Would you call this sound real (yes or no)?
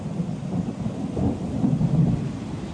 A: yes